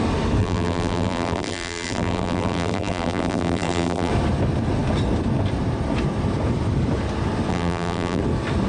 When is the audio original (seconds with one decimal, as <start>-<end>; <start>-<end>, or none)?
0.0-0.4; 4.1-7.5; 8.2-8.7